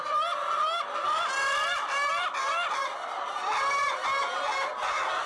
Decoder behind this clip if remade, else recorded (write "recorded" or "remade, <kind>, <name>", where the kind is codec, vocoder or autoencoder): recorded